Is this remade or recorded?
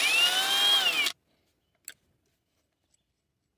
recorded